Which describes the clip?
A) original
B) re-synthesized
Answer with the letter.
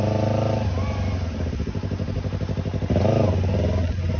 A